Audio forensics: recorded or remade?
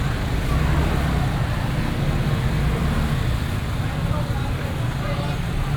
recorded